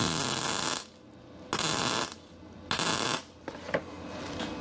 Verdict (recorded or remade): recorded